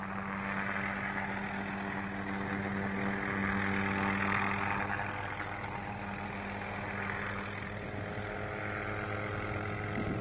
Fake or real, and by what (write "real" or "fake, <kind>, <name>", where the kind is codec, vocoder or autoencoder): real